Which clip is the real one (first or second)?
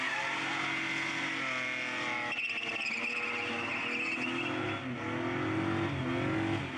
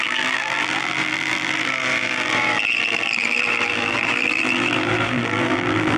first